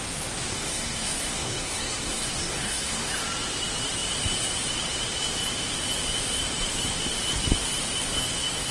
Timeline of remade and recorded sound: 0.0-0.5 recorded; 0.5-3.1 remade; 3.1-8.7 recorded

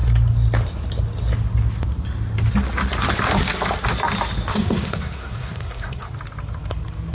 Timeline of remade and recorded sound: 0.0-4.5 recorded; 4.5-6.1 remade; 6.1-7.1 recorded

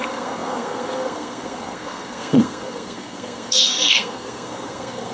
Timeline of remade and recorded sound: 0.0-5.1 remade

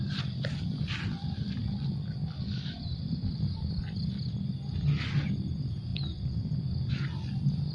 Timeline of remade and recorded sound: 0.0-7.7 recorded

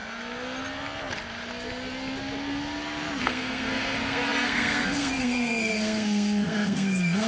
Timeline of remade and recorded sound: 0.0-3.2 recorded; 3.2-7.3 remade

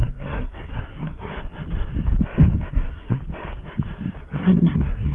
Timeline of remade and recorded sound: 0.0-1.3 remade; 1.3-2.7 recorded; 2.7-3.2 remade; 3.2-4.2 recorded; 4.2-5.1 remade

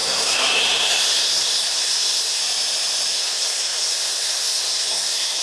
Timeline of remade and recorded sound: 0.0-2.4 remade; 2.4-3.1 recorded; 3.1-5.4 remade